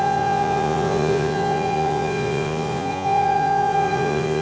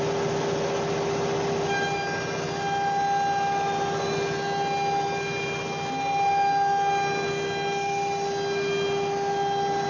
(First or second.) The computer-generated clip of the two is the first